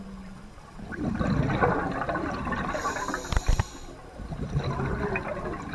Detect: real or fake real